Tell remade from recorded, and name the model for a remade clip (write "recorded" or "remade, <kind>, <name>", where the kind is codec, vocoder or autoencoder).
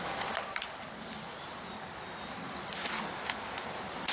recorded